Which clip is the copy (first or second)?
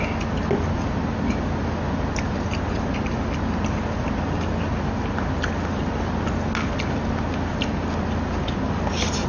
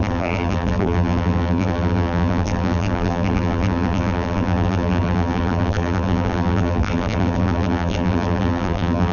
second